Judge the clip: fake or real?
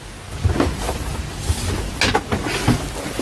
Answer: real